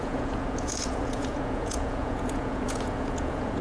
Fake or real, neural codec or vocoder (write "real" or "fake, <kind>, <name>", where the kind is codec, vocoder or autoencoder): fake, vocoder, Vocos